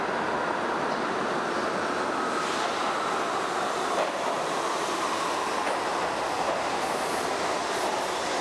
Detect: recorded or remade recorded